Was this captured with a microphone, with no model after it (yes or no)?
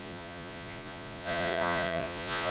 no